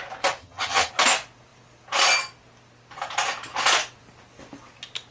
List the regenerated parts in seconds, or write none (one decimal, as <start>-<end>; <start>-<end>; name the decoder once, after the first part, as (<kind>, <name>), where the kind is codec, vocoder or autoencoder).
0.4-0.9 (vocoder, HiFi-GAN)